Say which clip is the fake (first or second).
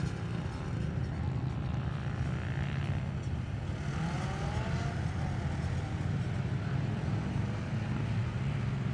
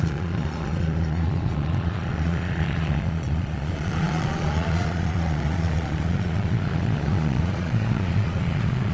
second